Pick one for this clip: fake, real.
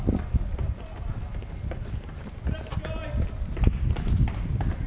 real